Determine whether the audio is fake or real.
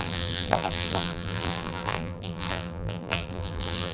fake